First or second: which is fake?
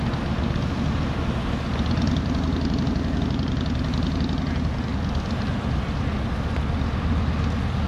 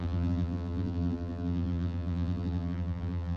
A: second